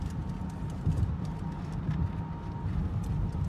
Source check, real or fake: real